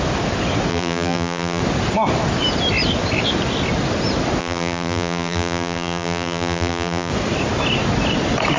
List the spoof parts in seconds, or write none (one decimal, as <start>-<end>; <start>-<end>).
0.7-1.6; 4.4-7.1